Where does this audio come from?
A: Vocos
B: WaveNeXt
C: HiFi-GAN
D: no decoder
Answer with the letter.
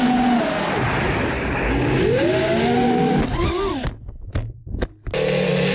D